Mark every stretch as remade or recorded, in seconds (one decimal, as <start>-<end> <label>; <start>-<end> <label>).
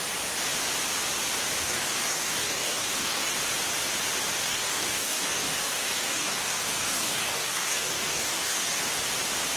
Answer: 0.0-1.6 recorded; 1.6-3.3 remade; 3.3-4.4 recorded; 4.4-8.8 remade; 8.8-9.6 recorded